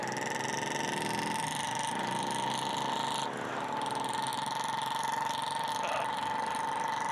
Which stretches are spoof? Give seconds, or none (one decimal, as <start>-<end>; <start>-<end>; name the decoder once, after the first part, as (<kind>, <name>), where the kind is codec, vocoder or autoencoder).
none